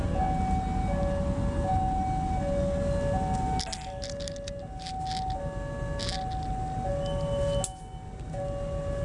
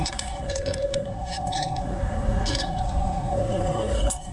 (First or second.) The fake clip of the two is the second